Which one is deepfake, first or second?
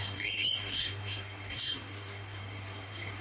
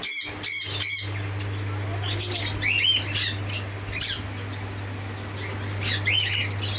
first